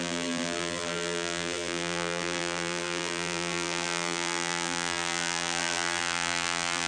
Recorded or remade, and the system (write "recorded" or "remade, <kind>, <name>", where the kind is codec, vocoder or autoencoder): remade, vocoder, BigVGAN v2